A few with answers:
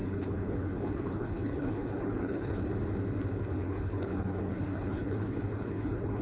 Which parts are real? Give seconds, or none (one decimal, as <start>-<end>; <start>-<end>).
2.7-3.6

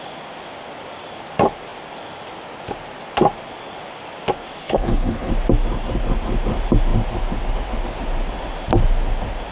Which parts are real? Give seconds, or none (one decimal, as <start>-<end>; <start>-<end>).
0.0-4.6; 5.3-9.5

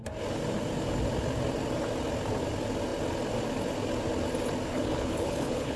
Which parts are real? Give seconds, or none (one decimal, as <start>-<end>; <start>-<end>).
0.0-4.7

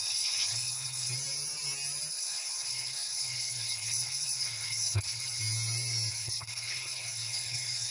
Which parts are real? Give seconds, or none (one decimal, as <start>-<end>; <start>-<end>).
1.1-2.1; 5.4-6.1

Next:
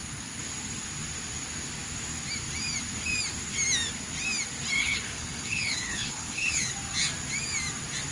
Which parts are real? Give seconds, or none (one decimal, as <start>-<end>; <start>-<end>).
0.0-4.8; 6.7-8.1

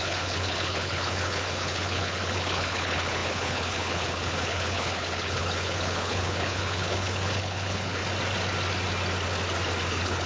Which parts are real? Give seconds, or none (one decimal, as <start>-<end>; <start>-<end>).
8.0-9.9

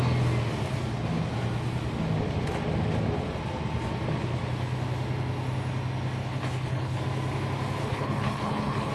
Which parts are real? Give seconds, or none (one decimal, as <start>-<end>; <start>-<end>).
0.0-6.2; 7.0-7.8

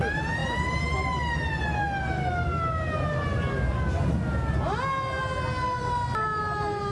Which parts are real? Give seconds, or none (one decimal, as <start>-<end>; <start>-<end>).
0.0-6.9